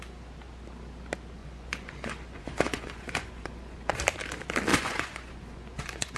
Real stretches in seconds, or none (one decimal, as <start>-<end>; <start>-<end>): 0.0-1.4; 3.9-4.7